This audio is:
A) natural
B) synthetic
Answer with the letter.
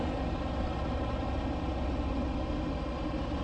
A